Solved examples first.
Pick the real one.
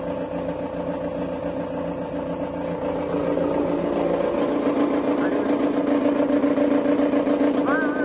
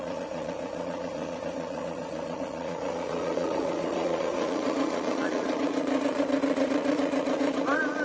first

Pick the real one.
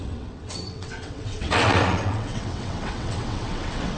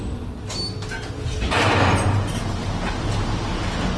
second